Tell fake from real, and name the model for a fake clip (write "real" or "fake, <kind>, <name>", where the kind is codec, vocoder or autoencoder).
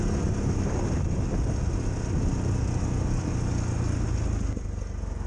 real